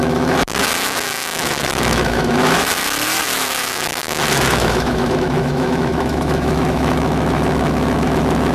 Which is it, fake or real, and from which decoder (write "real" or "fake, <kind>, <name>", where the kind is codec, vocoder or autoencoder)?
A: fake, autoencoder, DAC-VAE